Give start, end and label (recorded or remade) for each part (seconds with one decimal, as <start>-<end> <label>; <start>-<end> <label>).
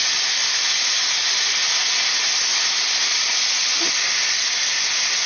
0.0-0.8 remade; 0.8-2.4 recorded; 2.4-4.4 remade; 4.4-5.3 recorded